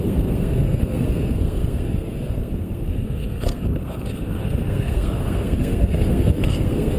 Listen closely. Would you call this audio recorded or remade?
remade